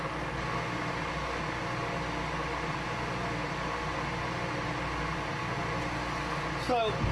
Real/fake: real